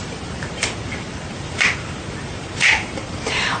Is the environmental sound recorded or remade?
remade